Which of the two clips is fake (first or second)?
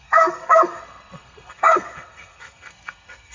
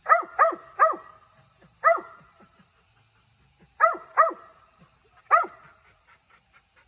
first